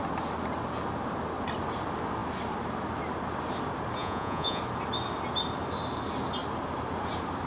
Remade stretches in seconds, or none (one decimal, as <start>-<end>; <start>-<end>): 4.0-4.6